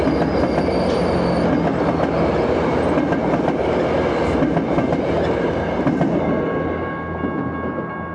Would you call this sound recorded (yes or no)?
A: yes